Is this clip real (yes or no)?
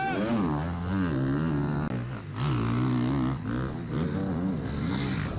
yes